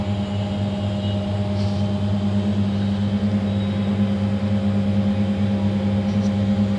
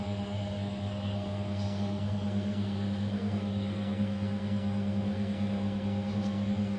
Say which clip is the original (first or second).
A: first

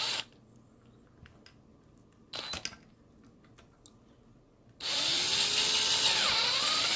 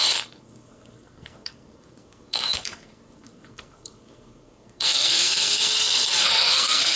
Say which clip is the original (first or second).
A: first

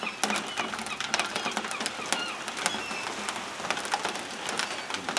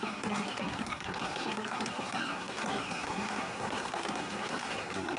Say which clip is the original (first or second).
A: first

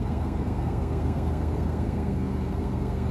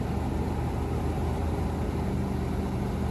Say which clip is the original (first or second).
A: second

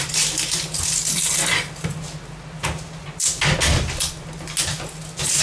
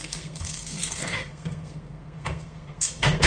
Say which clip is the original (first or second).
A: first